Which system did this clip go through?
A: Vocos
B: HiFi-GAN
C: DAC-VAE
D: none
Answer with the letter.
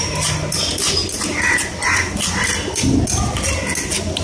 D